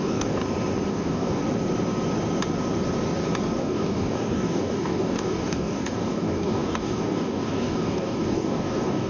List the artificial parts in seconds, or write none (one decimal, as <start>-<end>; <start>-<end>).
0.0-0.4; 0.9-1.4; 3.6-9.1